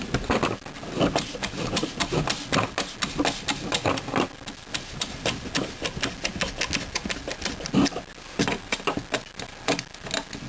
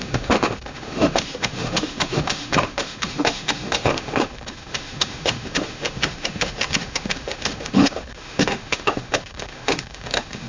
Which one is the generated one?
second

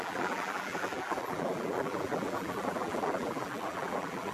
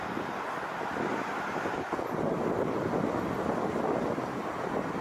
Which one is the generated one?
first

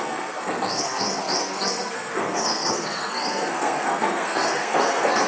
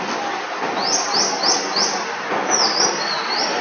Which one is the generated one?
first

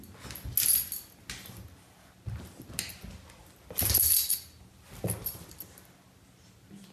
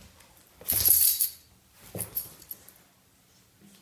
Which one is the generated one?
second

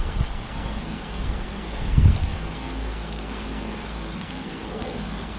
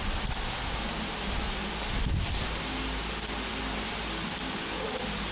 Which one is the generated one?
first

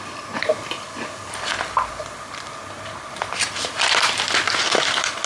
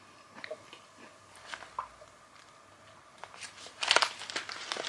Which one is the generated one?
first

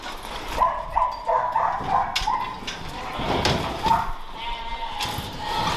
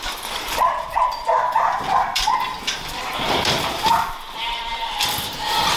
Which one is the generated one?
second